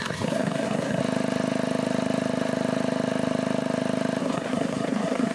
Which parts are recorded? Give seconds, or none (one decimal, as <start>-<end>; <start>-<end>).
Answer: 1.0-4.2